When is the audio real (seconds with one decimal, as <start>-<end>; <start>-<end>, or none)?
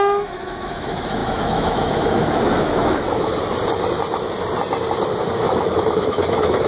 3.3-5.3